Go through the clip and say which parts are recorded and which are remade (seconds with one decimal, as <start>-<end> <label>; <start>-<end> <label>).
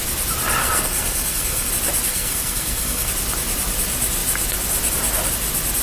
0.0-0.6 recorded; 0.6-1.7 remade; 1.7-2.1 recorded; 2.1-3.1 remade; 3.1-5.8 recorded